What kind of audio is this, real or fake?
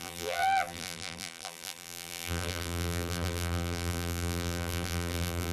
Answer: fake